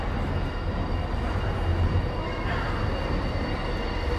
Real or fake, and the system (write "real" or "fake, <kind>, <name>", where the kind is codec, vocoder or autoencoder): real